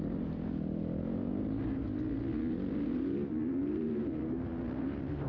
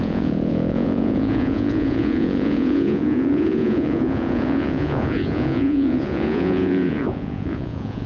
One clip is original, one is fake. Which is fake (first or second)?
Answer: second